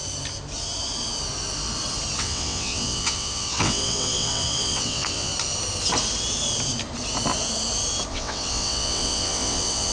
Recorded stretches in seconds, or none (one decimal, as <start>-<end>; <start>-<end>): 0.0-2.2; 5.3-8.1